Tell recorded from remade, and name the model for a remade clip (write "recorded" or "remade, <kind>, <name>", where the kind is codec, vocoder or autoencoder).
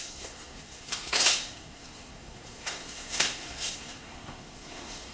remade, codec, SNAC